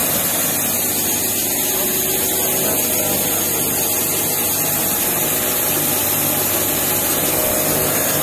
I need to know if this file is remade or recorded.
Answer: recorded